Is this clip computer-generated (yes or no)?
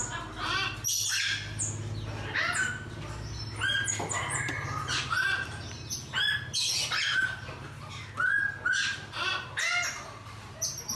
no